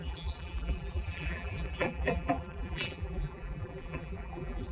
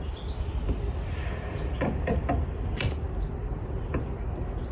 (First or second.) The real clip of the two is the second